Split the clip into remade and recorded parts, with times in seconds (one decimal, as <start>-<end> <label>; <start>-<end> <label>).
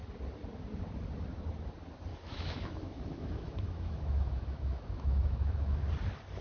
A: 0.0-2.1 recorded; 2.1-5.9 remade; 5.9-6.4 recorded